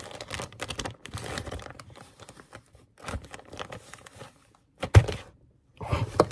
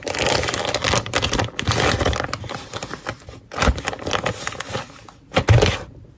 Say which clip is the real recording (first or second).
second